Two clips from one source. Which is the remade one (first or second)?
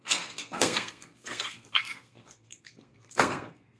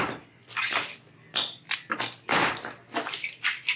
first